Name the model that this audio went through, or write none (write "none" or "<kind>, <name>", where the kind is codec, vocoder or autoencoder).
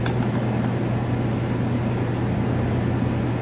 none